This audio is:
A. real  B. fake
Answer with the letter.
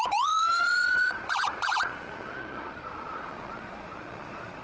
B